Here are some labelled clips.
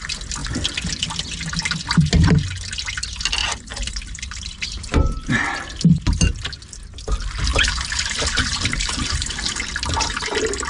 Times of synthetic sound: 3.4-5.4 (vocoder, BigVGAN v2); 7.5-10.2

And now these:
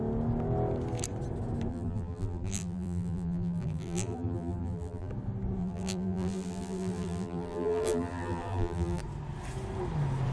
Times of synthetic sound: 1.7-5.1 (vocoder, BigVGAN v2); 5.6-9.0